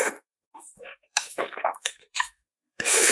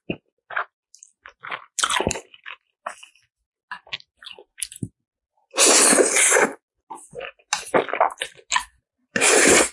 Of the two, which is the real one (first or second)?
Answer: second